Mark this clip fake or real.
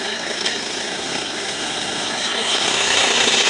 fake